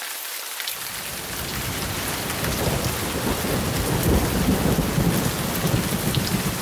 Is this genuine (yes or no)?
yes